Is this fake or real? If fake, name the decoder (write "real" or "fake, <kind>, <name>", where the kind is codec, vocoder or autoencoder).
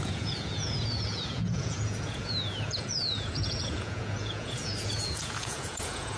fake, vocoder, Vocos